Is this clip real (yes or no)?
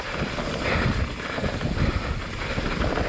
yes